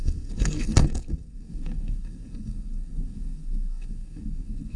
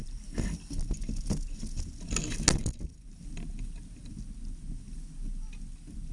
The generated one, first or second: first